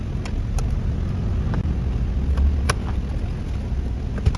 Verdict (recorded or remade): recorded